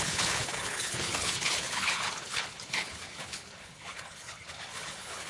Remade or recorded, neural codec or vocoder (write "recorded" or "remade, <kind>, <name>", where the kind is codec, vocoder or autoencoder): remade, codec, HILCodec